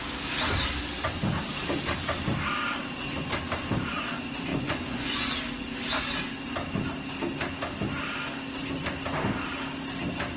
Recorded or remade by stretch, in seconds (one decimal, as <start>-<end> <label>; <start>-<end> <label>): 0.0-4.5 recorded; 4.5-5.3 remade; 5.3-10.4 recorded